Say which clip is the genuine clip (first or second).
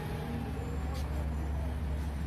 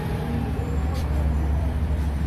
first